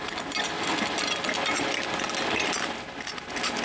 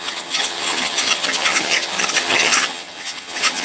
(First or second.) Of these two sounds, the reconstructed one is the second